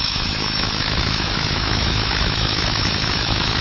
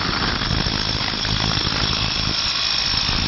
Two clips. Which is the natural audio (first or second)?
second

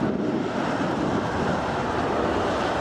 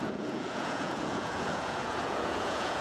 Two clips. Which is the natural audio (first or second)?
first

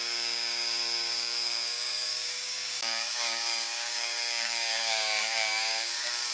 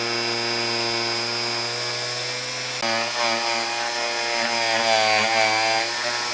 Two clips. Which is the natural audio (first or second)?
second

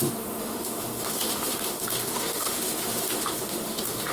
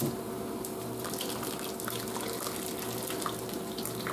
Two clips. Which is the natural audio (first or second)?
second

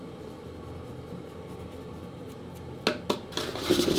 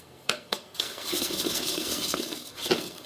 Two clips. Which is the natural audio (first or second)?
first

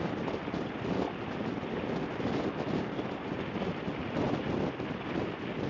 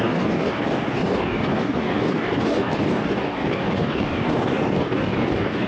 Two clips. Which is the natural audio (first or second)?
first